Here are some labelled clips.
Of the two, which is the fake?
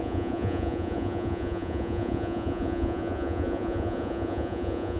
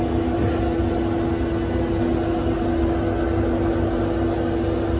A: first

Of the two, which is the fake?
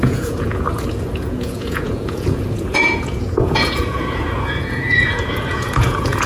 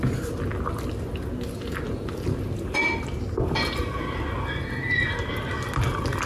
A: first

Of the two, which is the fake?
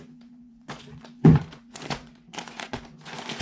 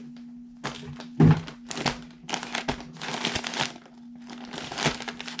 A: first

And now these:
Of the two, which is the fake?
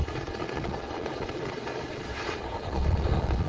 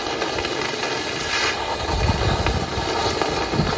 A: first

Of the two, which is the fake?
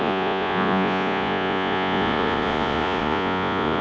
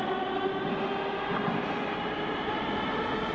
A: first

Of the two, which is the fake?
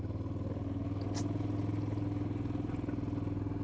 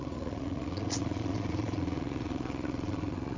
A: second